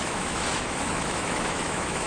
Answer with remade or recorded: remade